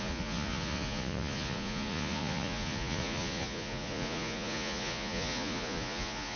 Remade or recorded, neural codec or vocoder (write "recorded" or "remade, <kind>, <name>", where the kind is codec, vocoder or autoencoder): remade, vocoder, Vocos